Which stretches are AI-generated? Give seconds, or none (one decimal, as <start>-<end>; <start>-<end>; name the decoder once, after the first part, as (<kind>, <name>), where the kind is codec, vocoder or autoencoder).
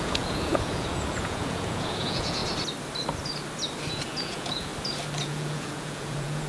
0.0-2.4 (vocoder, Vocos); 3.9-4.7; 5.2-6.5